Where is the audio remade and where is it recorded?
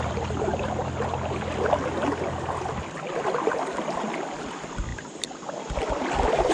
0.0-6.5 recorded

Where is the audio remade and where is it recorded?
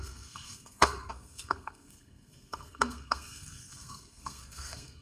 0.0-5.0 remade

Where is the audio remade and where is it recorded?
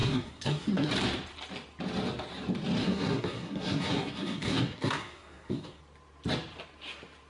0.0-0.9 remade; 0.9-2.8 recorded; 2.8-5.8 remade; 5.8-7.3 recorded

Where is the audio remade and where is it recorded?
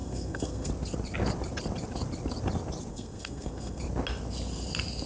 0.0-0.7 remade; 0.7-2.9 recorded; 2.9-3.8 remade; 3.8-5.1 recorded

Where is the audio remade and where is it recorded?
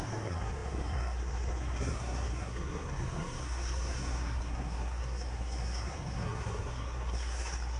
0.0-7.8 remade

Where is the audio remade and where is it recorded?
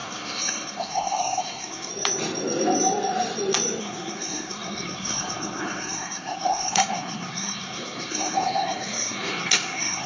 0.0-1.9 remade; 1.9-3.8 recorded; 3.8-10.1 remade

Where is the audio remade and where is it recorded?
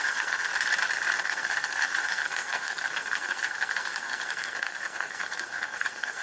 0.0-0.5 remade; 0.5-1.2 recorded; 1.2-6.2 remade